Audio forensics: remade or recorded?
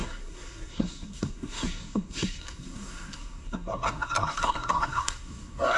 remade